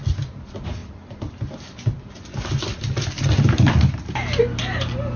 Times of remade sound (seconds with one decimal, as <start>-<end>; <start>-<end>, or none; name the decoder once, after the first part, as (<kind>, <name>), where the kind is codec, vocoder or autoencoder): none